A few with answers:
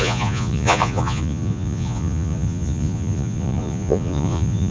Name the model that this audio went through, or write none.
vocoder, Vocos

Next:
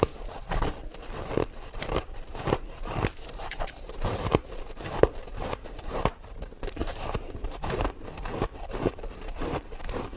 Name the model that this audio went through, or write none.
vocoder, BigVGAN v2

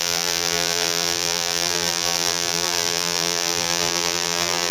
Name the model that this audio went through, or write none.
vocoder, BigVGAN v2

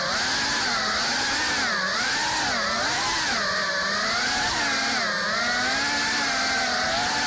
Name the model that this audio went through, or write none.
none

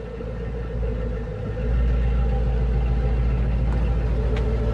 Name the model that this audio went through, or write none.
none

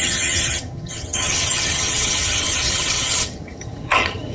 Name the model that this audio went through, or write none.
vocoder, HiFi-GAN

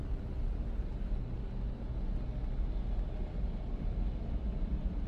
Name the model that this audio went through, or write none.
none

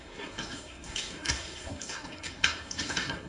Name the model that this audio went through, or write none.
codec, SNAC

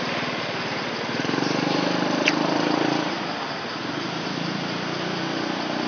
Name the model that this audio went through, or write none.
none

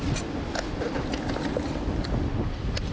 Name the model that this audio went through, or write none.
none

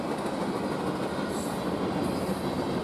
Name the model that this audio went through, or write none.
none